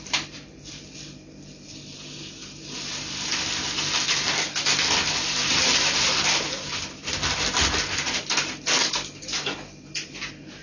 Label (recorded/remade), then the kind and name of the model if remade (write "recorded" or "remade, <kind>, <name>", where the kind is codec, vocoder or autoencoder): recorded